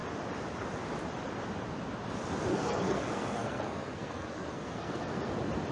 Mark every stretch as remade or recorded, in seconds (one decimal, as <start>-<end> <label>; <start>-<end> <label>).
0.0-2.5 recorded; 2.5-5.3 remade; 5.3-5.7 recorded